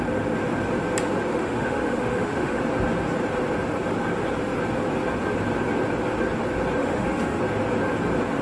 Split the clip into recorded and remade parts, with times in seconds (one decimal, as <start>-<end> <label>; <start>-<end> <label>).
0.0-1.3 recorded; 1.3-2.6 remade; 2.6-6.8 recorded; 6.8-7.4 remade; 7.4-8.4 recorded